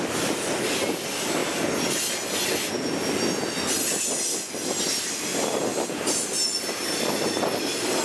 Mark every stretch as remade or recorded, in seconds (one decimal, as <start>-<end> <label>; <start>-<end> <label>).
0.0-5.7 recorded; 5.7-7.4 remade; 7.4-8.0 recorded